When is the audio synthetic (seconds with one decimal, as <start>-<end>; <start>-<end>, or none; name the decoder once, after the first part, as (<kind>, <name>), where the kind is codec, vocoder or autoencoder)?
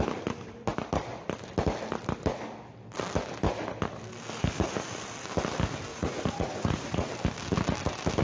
5.9-7.1 (vocoder, Vocos)